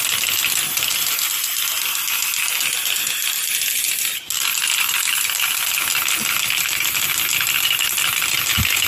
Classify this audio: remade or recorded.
recorded